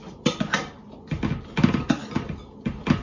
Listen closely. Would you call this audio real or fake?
real